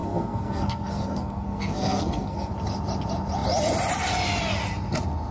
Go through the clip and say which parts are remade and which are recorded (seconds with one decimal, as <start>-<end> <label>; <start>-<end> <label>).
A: 0.0-2.5 remade; 2.5-5.3 recorded